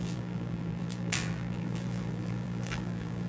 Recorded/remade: remade